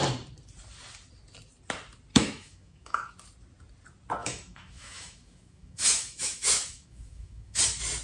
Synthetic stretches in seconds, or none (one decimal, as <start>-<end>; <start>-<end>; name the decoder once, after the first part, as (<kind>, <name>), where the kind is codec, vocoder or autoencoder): 2.1-3.1 (autoencoder, DAC-VAE); 4.2-7.6